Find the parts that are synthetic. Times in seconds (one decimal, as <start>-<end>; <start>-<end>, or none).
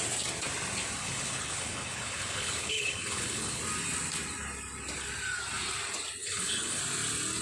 1.0-3.6; 6.2-6.8